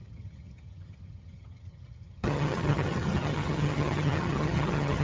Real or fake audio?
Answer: fake